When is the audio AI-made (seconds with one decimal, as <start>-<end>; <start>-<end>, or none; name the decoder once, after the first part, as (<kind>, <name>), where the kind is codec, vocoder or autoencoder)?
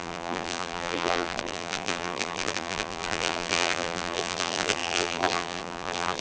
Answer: 0.0-6.2 (vocoder, BigVGAN v2)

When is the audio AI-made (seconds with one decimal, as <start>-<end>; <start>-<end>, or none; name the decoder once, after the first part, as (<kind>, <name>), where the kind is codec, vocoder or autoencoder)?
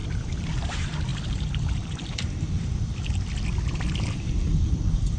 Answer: 0.5-5.2 (vocoder, BigVGAN v2)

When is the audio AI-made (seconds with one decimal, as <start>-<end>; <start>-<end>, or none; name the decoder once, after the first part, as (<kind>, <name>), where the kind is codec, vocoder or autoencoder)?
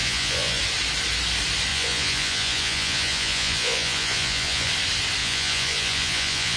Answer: 0.0-0.6 (vocoder, Vocos); 1.7-4.7; 5.2-6.6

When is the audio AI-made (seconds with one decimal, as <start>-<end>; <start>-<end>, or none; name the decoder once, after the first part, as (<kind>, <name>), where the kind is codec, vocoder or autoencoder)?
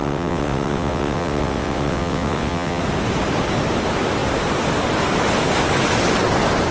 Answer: 0.0-2.8 (vocoder, WaveNeXt)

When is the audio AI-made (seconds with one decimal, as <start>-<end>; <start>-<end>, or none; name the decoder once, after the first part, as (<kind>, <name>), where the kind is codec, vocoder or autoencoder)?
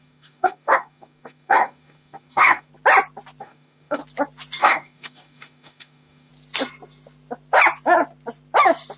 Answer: 0.0-2.7 (codec, DAC); 3.4-4.0; 4.6-6.3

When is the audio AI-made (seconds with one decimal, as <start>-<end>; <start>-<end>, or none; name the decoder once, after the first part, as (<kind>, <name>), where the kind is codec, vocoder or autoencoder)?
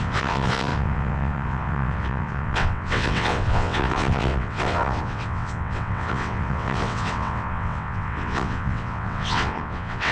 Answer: 0.0-10.1 (vocoder, WaveNeXt)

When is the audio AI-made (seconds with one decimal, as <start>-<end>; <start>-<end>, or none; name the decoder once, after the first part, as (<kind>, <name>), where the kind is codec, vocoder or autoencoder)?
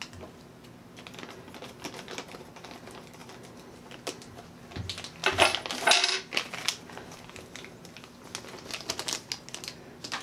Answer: none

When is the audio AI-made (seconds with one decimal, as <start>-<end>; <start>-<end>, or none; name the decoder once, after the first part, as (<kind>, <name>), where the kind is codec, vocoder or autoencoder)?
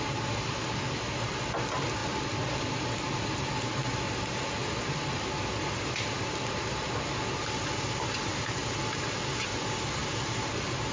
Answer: none